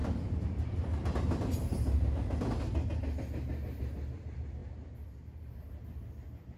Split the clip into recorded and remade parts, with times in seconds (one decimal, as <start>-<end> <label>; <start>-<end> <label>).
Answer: 0.0-6.6 recorded

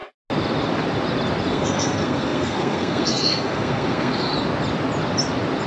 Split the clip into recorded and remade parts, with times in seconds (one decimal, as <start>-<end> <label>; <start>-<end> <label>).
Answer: 0.0-1.5 recorded; 1.5-4.3 remade; 4.3-5.7 recorded

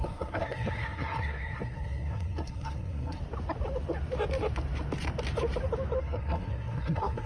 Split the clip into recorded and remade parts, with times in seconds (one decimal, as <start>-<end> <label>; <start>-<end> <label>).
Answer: 0.0-3.2 remade; 3.2-6.0 recorded; 6.0-7.3 remade